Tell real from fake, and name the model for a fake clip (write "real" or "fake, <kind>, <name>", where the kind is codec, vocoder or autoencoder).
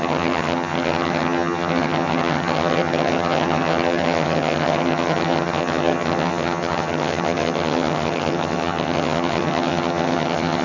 fake, vocoder, HiFi-GAN